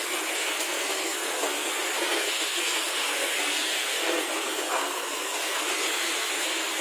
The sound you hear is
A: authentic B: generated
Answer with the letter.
B